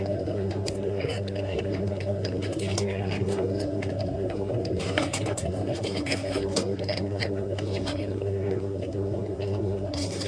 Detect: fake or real fake